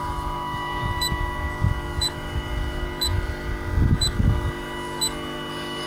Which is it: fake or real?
fake